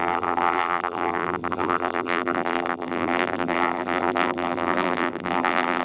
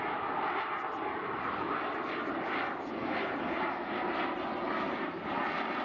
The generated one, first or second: first